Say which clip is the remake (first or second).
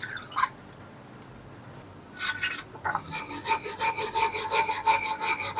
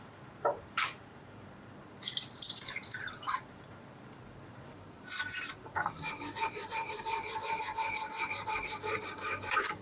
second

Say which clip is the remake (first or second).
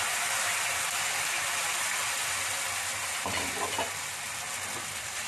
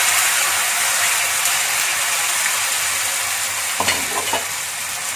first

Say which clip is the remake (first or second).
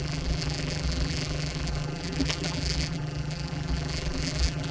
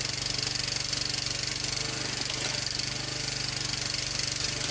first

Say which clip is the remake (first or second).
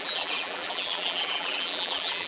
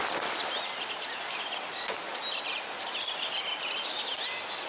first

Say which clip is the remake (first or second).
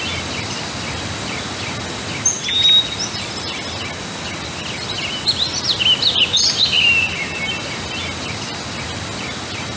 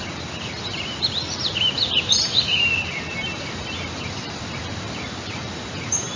second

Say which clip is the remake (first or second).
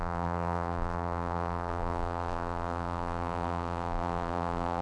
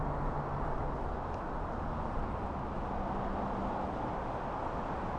first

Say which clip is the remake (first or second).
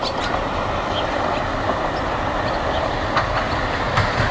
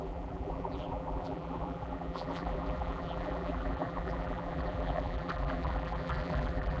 second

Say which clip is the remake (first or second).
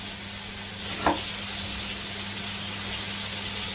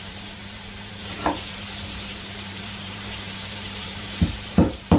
second